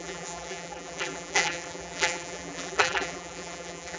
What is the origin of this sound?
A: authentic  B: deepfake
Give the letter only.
B